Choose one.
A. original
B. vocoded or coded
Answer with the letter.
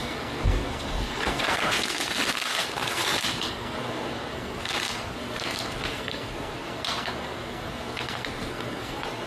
B